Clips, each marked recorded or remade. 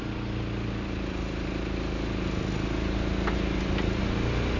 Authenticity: recorded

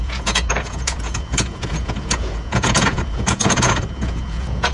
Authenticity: remade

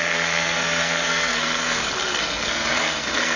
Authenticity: remade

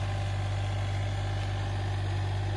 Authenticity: recorded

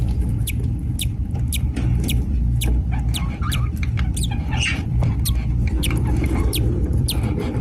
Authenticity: remade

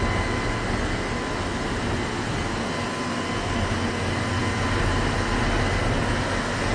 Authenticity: recorded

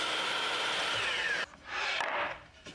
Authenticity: recorded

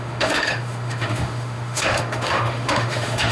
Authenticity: remade